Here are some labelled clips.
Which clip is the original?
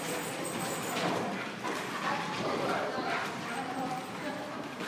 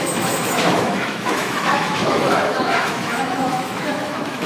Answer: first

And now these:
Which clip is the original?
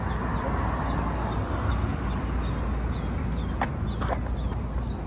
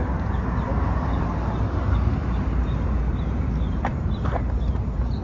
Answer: first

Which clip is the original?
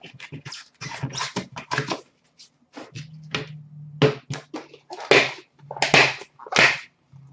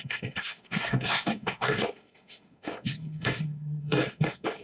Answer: first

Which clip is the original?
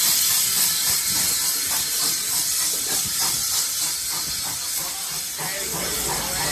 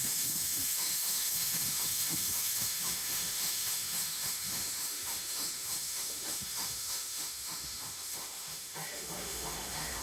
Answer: first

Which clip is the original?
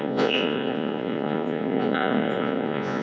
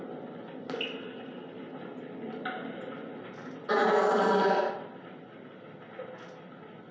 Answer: second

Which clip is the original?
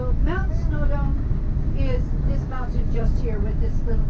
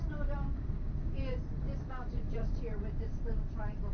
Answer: first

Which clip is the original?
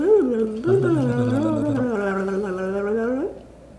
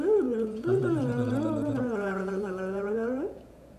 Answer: first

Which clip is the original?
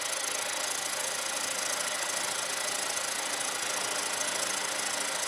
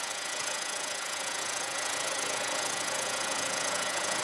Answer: first